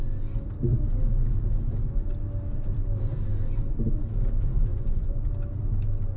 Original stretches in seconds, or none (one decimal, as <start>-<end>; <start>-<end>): 0.0-4.7; 5.3-6.2